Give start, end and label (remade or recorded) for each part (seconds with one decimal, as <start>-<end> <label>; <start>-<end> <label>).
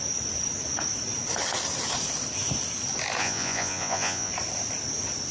0.0-3.2 recorded; 3.2-4.3 remade; 4.3-5.3 recorded